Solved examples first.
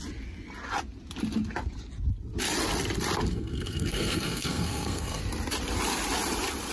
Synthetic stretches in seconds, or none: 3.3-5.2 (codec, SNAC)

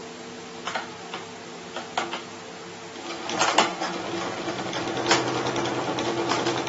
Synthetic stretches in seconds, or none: none

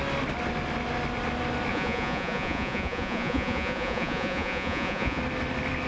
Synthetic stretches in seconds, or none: 1.7-5.2 (vocoder, Vocos)

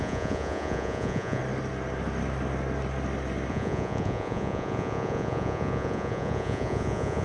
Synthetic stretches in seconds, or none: 0.0-1.4 (vocoder, Vocos); 3.5-7.2

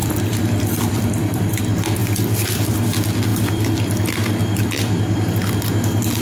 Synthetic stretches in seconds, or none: 0.0-1.6 (vocoder, BigVGAN v2); 2.0-2.7

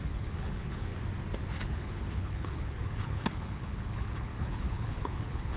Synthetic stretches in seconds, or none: 0.0-0.9 (codec, HILCodec); 1.5-5.6